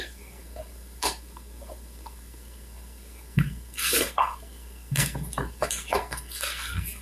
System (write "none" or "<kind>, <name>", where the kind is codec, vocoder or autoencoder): codec, SNAC